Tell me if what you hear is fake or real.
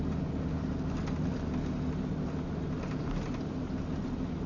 real